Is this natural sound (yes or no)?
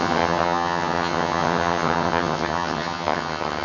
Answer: no